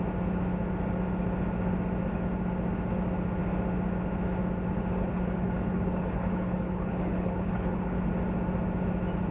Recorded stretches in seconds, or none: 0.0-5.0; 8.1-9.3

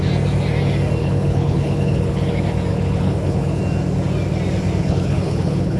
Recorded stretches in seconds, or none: 0.0-1.0; 2.3-2.7; 3.6-4.8

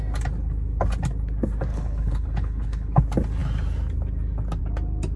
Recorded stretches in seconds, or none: 0.0-1.7; 3.0-5.2

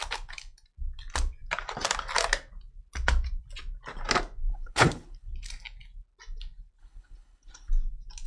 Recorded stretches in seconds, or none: 0.0-4.5; 5.3-6.8; 7.7-8.3

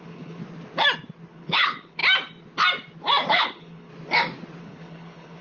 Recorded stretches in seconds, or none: 0.4-1.3; 2.0-3.3; 3.9-4.6